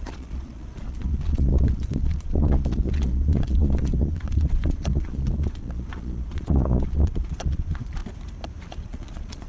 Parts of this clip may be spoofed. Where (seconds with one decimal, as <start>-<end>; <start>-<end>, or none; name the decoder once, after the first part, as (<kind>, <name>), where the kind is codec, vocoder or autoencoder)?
0.0-8.0 (vocoder, Vocos); 8.6-9.5